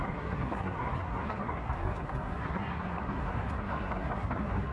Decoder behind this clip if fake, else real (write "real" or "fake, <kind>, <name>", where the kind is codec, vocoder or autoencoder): fake, codec, SNAC